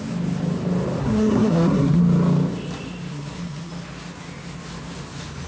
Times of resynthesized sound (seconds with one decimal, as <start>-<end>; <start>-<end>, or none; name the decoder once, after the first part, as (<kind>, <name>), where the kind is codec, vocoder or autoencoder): 1.0-2.0 (codec, SNAC); 3.1-3.7